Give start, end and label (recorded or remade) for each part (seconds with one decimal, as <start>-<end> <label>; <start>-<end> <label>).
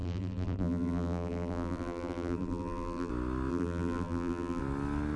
0.0-3.1 remade; 3.1-3.5 recorded; 3.5-4.6 remade; 4.6-5.2 recorded